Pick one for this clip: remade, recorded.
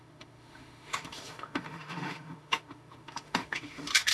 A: remade